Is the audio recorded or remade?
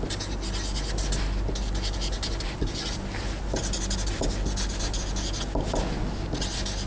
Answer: recorded